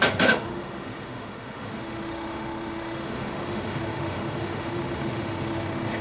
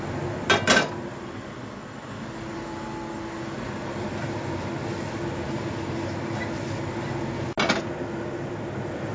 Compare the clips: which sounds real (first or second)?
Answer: second